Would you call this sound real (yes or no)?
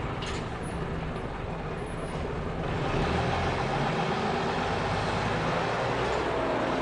yes